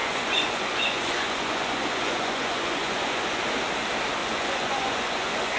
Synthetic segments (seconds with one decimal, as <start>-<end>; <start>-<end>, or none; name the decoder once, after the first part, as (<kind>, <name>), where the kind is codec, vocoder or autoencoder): 0.0-3.4 (vocoder, Vocos); 4.2-5.6